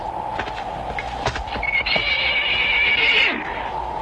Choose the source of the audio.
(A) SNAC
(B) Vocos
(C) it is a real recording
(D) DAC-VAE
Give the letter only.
C